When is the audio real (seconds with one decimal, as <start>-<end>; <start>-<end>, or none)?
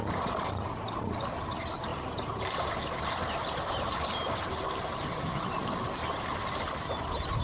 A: 0.0-1.9; 5.3-6.0